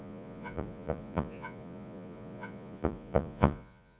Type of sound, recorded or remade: remade